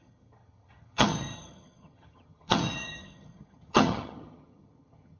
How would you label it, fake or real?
fake